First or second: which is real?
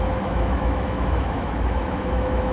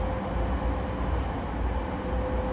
second